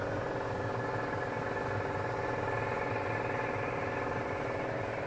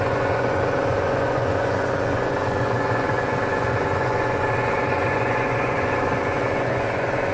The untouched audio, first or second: first